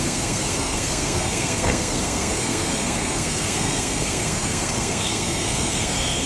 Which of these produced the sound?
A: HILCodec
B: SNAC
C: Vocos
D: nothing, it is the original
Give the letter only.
B